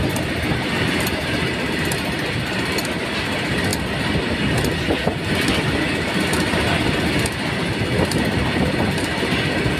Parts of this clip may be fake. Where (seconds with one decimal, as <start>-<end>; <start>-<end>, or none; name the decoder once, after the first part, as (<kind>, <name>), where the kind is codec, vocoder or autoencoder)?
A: none